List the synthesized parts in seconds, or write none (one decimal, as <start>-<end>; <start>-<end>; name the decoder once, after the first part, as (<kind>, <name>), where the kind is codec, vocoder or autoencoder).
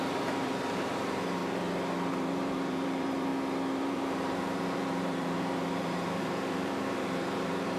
0.0-1.4 (vocoder, BigVGAN v2); 2.1-3.3; 3.8-7.8